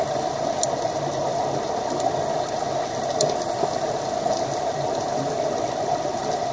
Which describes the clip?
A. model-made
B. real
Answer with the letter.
B